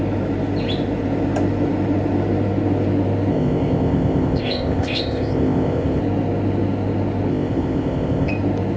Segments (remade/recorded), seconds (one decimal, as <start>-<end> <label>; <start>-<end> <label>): 0.0-3.3 recorded; 3.3-6.0 remade; 6.0-7.3 recorded; 7.3-8.3 remade; 8.3-8.8 recorded